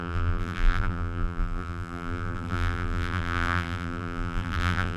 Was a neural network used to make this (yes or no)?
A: yes